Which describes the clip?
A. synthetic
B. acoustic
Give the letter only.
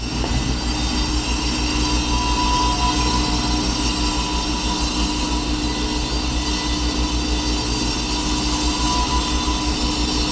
B